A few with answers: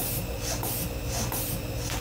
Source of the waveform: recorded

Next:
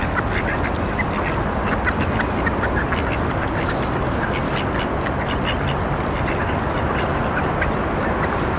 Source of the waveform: recorded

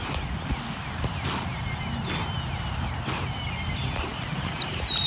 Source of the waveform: recorded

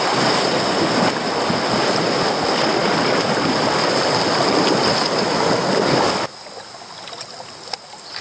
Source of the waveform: recorded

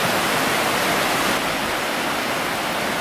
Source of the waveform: recorded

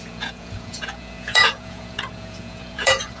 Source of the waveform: remade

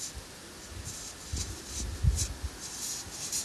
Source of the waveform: recorded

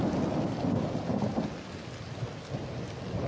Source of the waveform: recorded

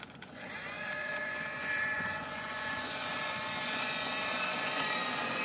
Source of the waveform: remade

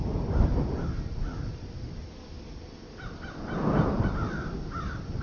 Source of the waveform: recorded